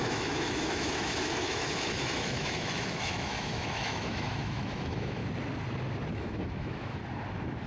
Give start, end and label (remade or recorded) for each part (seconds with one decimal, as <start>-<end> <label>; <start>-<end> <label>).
0.0-5.2 remade; 5.2-6.1 recorded; 6.1-7.0 remade; 7.0-7.7 recorded